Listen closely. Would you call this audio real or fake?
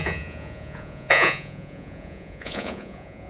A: fake